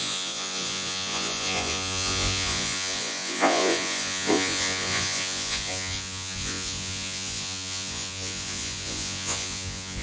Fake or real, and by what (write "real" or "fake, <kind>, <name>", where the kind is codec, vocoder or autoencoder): fake, vocoder, Vocos